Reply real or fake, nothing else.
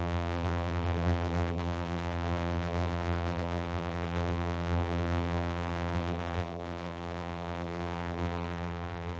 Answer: fake